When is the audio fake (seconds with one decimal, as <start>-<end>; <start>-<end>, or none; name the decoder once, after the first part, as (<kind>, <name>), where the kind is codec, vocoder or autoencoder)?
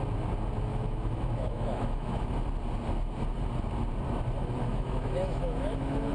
0.7-2.3 (autoencoder, DAC-VAE); 4.4-6.1